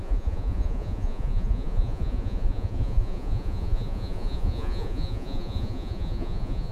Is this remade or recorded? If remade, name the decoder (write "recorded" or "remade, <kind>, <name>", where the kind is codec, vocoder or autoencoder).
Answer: remade, vocoder, Vocos